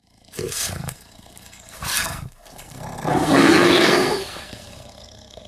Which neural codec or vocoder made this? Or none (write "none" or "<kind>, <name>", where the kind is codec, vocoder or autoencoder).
codec, SNAC